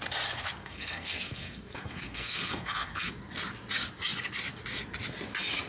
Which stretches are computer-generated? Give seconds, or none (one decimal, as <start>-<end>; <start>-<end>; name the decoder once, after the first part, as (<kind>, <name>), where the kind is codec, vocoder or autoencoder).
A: 0.6-3.1 (codec, SNAC)